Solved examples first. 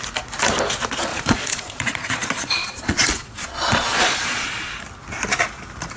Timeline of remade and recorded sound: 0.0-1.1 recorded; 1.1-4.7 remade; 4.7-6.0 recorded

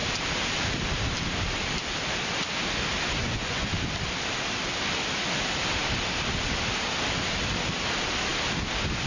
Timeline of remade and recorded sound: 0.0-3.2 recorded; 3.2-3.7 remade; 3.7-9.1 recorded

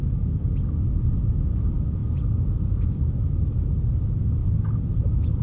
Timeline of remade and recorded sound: 0.0-5.4 recorded